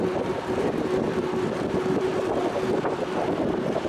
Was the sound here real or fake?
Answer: real